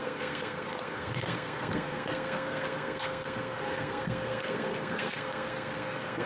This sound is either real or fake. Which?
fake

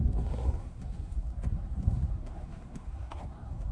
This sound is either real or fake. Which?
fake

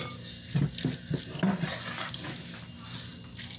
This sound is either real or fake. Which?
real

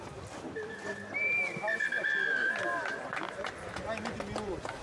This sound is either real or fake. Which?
real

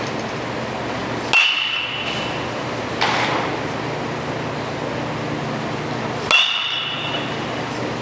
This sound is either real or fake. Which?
real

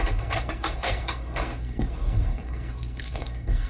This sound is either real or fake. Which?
fake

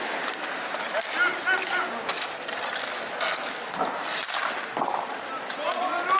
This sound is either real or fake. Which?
real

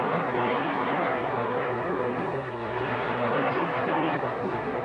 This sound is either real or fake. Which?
fake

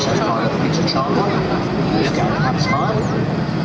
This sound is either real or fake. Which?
real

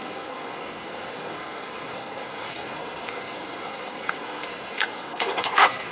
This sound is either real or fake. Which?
fake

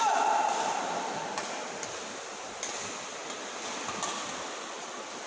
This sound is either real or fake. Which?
real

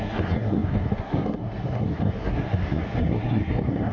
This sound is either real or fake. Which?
fake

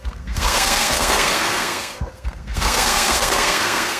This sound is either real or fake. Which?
fake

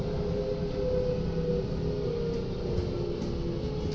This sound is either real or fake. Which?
real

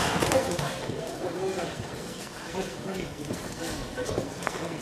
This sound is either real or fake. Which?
fake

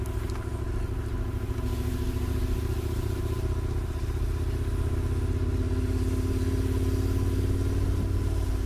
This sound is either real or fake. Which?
real